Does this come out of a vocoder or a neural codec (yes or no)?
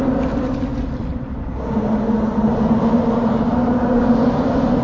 no